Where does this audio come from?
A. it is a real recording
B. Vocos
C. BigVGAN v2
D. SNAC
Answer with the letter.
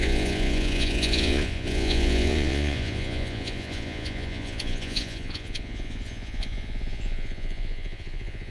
B